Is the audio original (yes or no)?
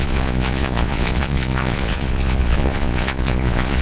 no